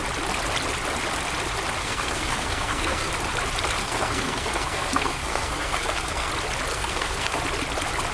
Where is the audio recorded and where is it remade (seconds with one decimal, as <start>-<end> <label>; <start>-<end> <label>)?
0.0-1.8 recorded; 1.8-3.1 remade; 3.1-3.8 recorded; 3.8-6.3 remade; 6.3-6.7 recorded; 6.7-7.4 remade; 7.4-8.1 recorded